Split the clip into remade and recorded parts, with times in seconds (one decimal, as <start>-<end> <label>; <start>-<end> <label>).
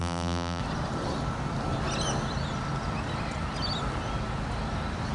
0.0-0.6 remade; 0.6-5.1 recorded